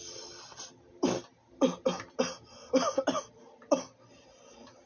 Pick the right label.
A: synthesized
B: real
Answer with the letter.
B